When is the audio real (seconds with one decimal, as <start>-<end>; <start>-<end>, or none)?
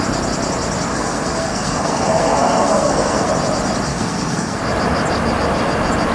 0.0-0.9; 3.3-3.9; 4.6-6.1